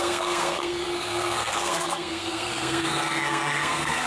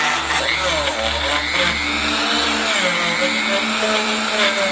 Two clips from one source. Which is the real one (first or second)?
second